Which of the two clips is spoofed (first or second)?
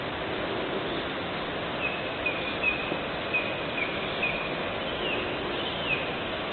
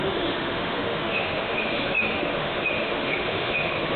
second